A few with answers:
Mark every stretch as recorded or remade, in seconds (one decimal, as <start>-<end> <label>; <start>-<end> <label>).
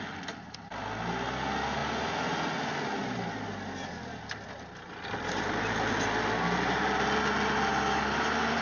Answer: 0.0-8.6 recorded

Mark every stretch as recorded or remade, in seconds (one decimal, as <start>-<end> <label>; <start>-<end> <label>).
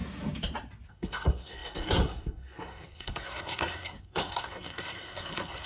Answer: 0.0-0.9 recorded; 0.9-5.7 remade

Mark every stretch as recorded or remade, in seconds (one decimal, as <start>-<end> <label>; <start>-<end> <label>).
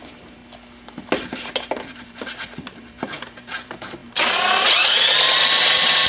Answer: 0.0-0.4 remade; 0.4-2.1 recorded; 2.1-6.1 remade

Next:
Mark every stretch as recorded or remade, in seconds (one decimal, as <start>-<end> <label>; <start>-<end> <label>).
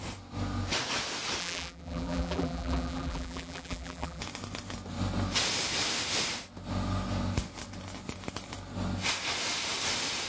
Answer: 0.0-1.4 recorded; 1.4-4.2 remade; 4.2-10.3 recorded